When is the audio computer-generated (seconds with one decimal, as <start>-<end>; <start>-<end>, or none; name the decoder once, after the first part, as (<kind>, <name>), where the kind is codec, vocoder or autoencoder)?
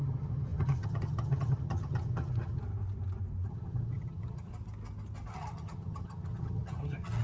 0.0-2.6 (vocoder, HiFi-GAN); 3.5-4.5; 5.3-7.2